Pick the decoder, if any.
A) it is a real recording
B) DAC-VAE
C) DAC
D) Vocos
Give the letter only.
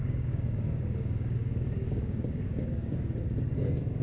C